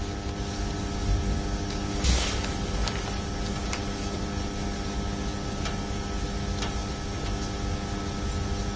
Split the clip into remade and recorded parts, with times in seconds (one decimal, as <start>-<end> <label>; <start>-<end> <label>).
0.0-8.8 recorded